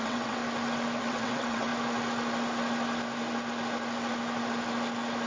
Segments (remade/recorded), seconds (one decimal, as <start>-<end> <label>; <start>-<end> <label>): 0.0-0.4 remade; 0.4-1.0 recorded; 1.0-1.7 remade; 1.7-5.3 recorded